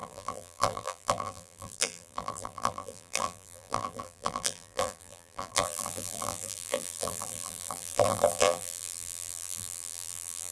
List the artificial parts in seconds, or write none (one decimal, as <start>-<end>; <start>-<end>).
0.0-10.5